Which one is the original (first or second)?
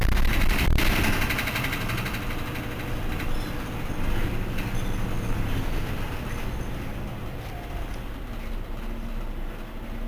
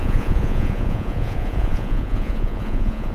first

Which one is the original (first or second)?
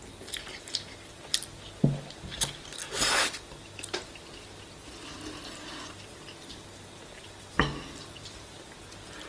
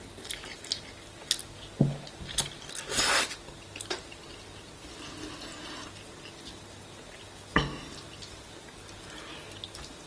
second